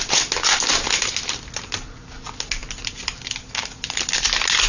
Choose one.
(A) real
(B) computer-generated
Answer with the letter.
A